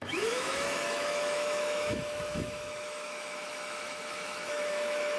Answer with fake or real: fake